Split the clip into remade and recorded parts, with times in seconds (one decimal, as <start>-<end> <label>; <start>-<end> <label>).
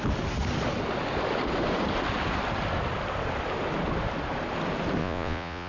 0.0-5.0 recorded; 5.0-5.7 remade